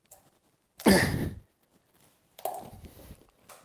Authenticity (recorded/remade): recorded